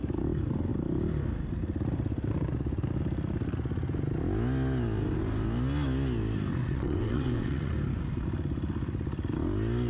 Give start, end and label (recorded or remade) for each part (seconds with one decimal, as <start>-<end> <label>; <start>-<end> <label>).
0.0-6.6 recorded; 6.6-7.7 remade; 7.7-9.9 recorded